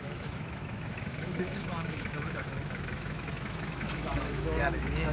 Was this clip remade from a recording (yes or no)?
yes